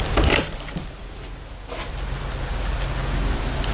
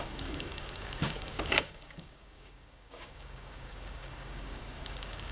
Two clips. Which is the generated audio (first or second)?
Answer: second